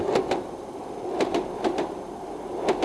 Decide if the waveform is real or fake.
fake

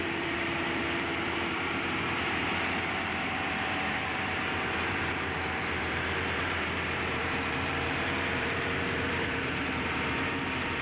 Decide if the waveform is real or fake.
fake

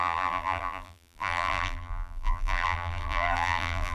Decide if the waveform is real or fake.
fake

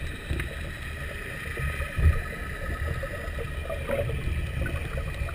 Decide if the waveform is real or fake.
real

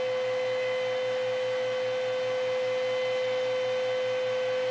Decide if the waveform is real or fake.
real